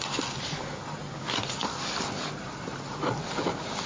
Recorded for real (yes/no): yes